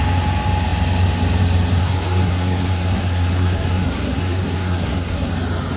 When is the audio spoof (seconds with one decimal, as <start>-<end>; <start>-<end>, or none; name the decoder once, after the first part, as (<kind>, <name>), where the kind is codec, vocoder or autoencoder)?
1.8-5.3 (codec, SNAC)